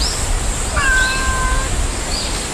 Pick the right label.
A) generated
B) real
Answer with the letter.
B